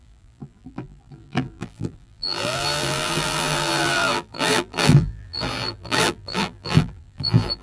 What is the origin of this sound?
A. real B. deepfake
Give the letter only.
B